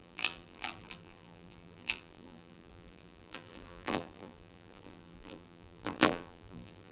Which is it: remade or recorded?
remade